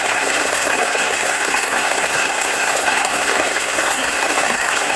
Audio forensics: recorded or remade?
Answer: remade